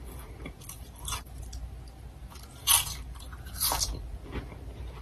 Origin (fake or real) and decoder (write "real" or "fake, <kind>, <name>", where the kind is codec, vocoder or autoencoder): real